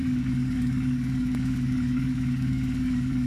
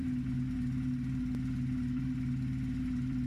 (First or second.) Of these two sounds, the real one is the second